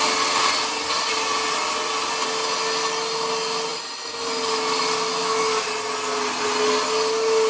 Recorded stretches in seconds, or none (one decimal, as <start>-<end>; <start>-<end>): 0.0-5.2; 5.7-7.5